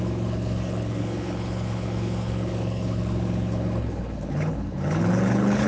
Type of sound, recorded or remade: remade